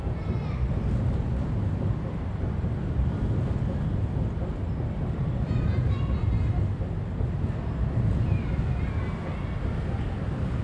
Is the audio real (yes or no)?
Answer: yes